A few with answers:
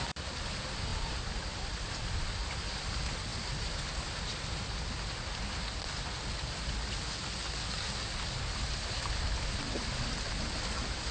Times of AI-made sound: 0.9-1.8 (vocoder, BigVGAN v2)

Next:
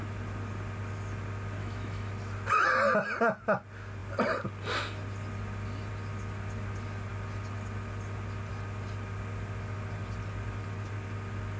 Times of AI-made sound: 1.6-2.1 (autoencoder, DAC-VAE)